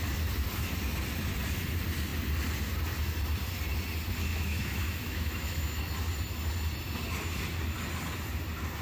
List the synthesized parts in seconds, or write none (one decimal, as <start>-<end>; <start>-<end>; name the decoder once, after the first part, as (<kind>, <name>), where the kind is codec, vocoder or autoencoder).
4.3-5.8 (autoencoder, DAC-VAE)